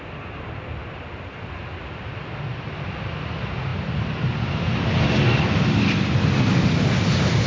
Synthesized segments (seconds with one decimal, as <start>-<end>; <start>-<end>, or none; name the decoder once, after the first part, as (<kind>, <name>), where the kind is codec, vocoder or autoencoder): none